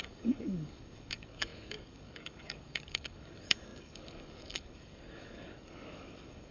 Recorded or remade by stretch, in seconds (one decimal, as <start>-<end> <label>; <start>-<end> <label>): 0.0-6.5 remade